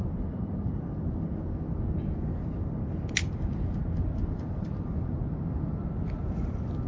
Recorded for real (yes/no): yes